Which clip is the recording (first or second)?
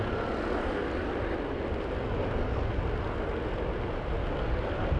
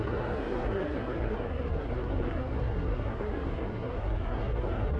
first